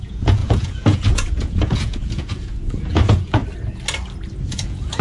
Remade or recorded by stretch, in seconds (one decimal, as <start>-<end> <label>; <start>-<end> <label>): 0.0-3.4 remade; 3.4-4.5 recorded; 4.5-5.0 remade